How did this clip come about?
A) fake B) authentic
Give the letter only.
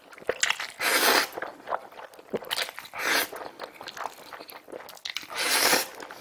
B